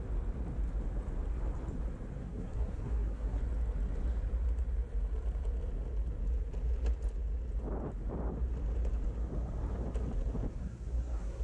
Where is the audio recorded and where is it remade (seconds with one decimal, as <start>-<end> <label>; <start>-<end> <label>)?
0.0-2.2 recorded; 2.2-3.4 remade; 3.4-10.5 recorded; 10.5-11.4 remade